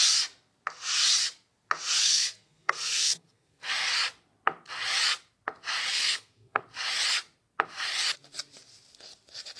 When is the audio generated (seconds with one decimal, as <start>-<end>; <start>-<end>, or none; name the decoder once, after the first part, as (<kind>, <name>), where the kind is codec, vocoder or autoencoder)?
2.0-3.7 (codec, SNAC); 5.9-6.6